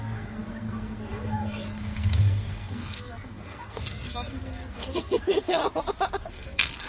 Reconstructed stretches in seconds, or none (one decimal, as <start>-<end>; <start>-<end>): 0.0-5.6; 6.2-6.9